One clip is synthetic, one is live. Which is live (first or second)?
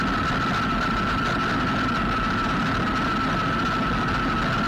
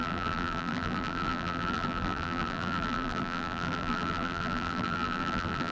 first